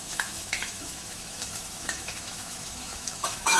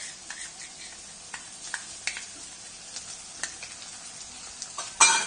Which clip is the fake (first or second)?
first